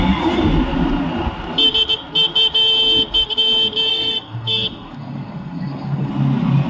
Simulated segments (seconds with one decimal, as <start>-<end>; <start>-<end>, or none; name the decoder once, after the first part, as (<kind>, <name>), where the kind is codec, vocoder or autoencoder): 3.9-6.1 (codec, SNAC)